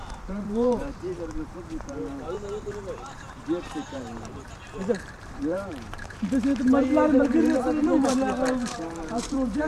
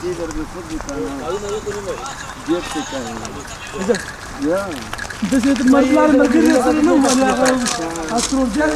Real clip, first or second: second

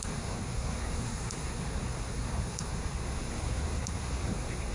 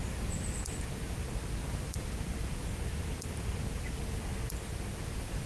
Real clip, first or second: second